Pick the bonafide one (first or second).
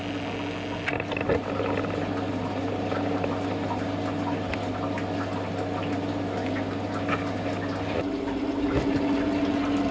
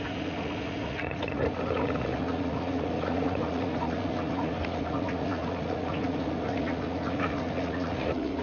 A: first